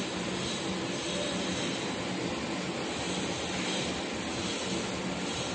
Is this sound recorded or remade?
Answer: recorded